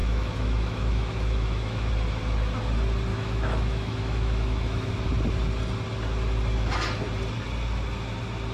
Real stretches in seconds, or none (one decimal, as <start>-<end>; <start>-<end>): 1.9-3.1; 4.9-8.5